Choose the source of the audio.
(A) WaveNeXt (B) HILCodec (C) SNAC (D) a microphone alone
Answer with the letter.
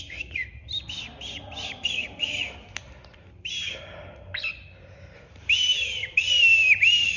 D